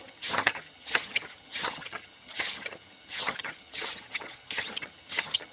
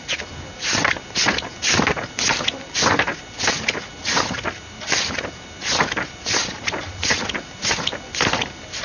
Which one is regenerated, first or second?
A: first